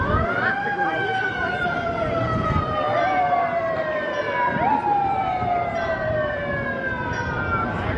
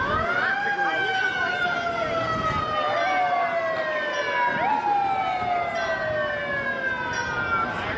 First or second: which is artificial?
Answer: first